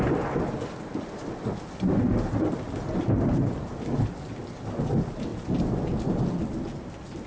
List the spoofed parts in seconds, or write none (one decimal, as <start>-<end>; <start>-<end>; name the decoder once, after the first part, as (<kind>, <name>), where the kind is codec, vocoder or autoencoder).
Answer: none